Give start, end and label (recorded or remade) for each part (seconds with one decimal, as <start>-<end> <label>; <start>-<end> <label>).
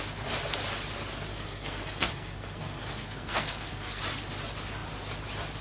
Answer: 0.0-1.3 recorded; 1.3-4.0 remade; 4.0-5.6 recorded